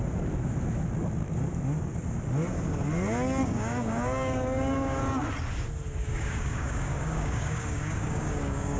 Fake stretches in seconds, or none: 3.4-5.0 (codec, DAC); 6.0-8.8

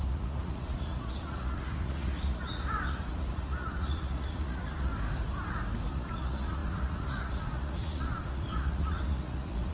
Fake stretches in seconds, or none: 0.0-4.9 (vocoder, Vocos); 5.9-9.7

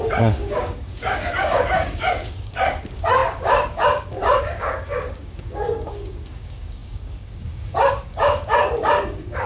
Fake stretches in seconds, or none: 0.0-9.5 (codec, DAC)

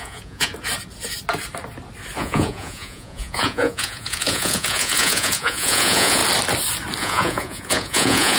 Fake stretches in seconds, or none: 0.0-0.5 (vocoder, Vocos); 2.2-6.2; 7.0-8.4

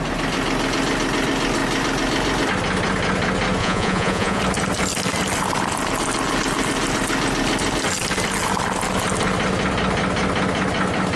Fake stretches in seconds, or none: 3.6-4.4 (vocoder, Vocos)